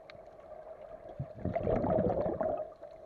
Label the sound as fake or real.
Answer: real